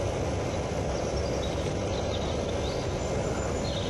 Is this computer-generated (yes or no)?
no